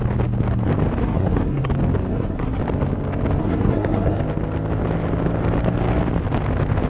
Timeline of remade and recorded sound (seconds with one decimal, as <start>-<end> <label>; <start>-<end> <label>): 0.0-1.0 recorded; 1.0-1.7 remade; 1.7-2.1 recorded; 2.1-2.6 remade; 2.6-3.4 recorded; 3.4-4.2 remade; 4.2-6.9 recorded